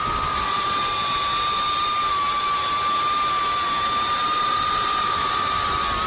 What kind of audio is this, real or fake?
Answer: real